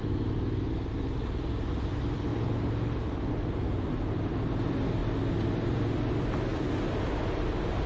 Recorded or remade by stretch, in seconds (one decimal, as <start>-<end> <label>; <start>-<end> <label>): 0.0-0.7 remade; 0.7-7.9 recorded